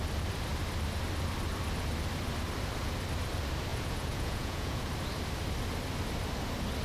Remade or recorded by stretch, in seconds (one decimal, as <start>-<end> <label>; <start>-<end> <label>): 0.0-3.7 recorded; 3.7-4.9 remade; 4.9-6.8 recorded